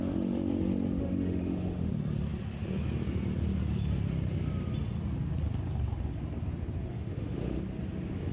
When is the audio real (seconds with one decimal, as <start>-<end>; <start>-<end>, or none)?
0.0-1.0; 1.9-6.9; 7.6-8.3